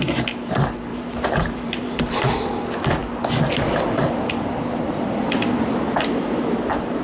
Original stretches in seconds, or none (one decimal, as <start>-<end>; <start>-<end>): 0.0-0.9; 2.0-7.0